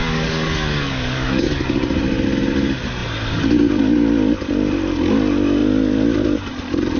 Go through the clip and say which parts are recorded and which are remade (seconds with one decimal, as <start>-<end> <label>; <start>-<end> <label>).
0.0-1.9 remade; 1.9-7.0 recorded